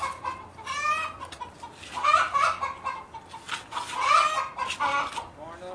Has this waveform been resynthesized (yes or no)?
no